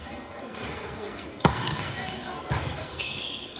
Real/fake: fake